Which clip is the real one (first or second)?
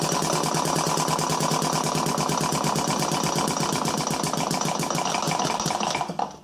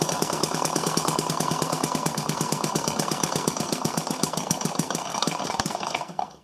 first